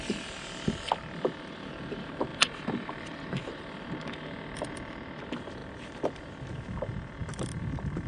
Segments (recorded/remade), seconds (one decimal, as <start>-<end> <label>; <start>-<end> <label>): 0.0-2.3 recorded; 2.3-3.6 remade; 3.6-8.1 recorded